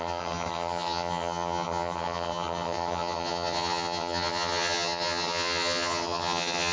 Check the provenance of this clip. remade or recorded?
remade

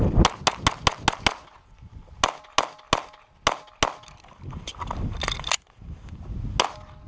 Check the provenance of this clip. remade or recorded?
recorded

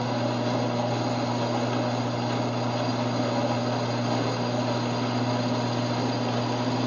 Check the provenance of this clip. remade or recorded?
recorded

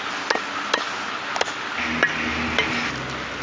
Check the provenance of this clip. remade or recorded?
recorded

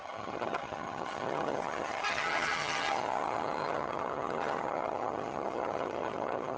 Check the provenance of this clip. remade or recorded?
remade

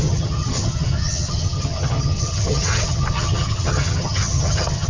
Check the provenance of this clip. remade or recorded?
remade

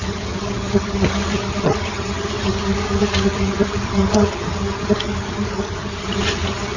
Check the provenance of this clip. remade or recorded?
remade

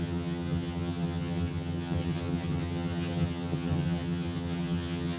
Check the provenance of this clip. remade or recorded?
remade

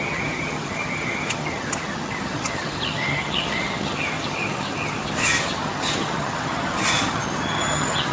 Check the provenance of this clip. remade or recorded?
remade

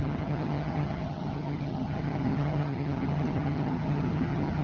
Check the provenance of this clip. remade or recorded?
remade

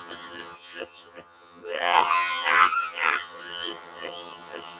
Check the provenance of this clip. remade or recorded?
remade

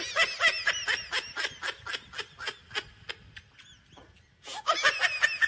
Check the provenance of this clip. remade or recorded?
recorded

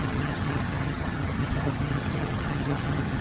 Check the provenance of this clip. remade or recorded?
remade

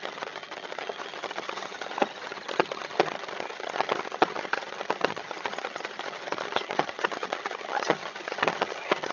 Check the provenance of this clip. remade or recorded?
remade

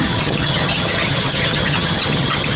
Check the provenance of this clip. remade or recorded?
remade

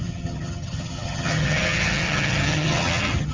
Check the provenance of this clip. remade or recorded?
remade